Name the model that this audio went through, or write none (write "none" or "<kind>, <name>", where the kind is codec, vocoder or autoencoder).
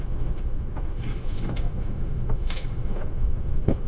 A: autoencoder, DAC-VAE